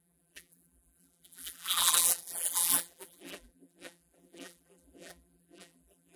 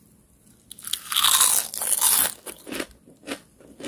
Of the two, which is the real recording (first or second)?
second